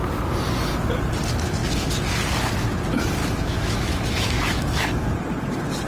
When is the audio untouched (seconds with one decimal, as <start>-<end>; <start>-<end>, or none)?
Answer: 0.0-3.2; 4.9-5.9